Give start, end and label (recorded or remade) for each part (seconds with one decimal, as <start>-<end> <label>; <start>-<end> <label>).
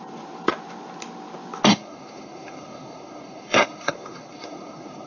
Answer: 0.0-1.7 recorded; 1.7-5.1 remade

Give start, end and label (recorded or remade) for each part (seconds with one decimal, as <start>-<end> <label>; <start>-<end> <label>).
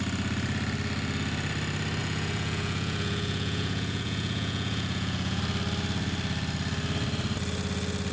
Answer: 0.0-2.0 recorded; 2.0-5.4 remade; 5.4-8.1 recorded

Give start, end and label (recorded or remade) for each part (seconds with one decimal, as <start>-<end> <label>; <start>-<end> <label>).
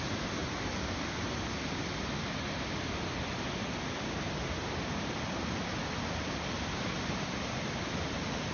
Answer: 0.0-0.4 recorded; 0.4-1.1 remade; 1.1-8.5 recorded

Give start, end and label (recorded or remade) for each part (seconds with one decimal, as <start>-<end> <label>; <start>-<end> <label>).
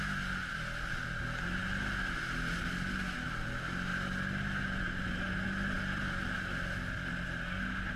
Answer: 0.0-8.0 recorded